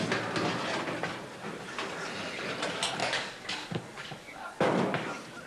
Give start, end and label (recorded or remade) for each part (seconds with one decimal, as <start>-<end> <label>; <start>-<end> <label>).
0.0-3.0 recorded; 3.0-4.7 remade; 4.7-5.5 recorded